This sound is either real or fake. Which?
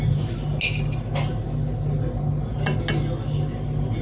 real